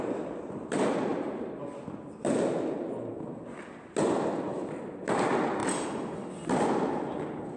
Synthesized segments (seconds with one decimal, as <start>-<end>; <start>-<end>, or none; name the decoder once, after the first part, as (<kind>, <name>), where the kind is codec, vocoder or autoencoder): none